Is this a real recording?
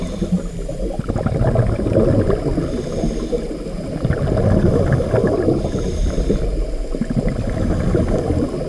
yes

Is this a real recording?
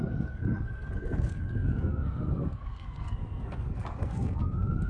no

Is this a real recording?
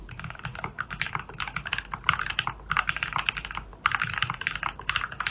yes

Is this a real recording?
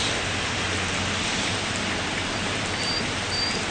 yes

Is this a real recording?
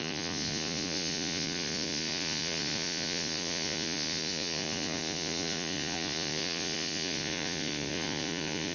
no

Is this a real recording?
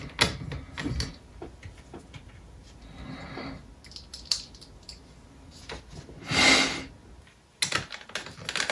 yes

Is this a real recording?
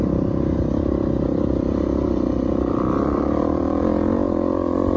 yes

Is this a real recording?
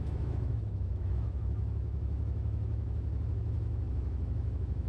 no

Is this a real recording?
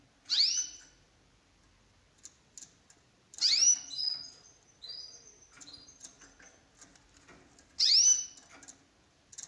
yes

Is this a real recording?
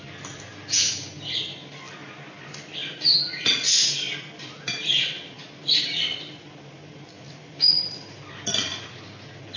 yes